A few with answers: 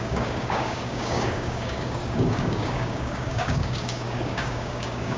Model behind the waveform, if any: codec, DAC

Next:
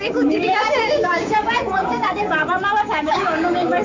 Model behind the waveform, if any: codec, DAC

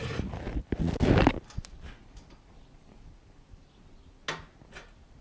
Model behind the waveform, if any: none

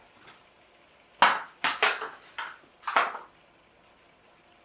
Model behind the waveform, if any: none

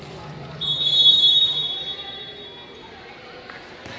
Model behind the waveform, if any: none